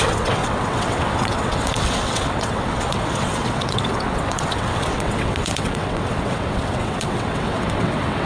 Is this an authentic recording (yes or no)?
no